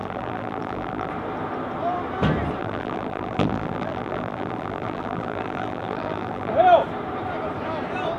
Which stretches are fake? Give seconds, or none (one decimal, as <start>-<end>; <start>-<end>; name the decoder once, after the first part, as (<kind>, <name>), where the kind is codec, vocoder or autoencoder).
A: 0.0-1.1 (vocoder, BigVGAN v2); 2.6-6.5